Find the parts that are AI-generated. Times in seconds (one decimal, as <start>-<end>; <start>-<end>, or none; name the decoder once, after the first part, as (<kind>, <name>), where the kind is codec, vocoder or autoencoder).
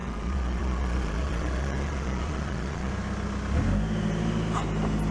0.0-2.9 (vocoder, Vocos)